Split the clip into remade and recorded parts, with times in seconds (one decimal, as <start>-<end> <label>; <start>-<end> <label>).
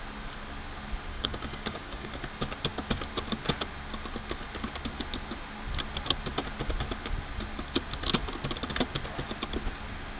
0.0-1.1 recorded; 1.1-2.1 remade; 2.1-10.2 recorded